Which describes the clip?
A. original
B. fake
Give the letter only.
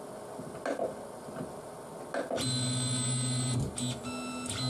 A